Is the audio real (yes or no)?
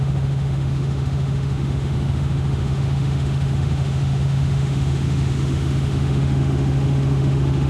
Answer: no